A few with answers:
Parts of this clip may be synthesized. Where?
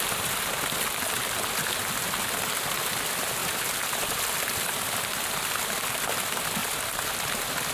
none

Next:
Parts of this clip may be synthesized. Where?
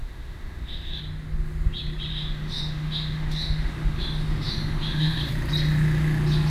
0.0-1.0 (autoencoder, DAC-VAE); 2.1-5.3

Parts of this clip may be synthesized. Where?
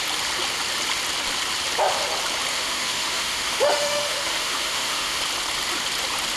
2.5-5.2 (autoencoder, DAC-VAE)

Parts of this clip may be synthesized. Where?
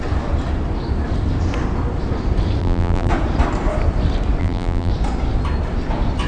2.6-3.1 (vocoder, BigVGAN v2); 4.4-4.9